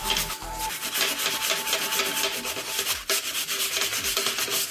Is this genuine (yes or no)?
yes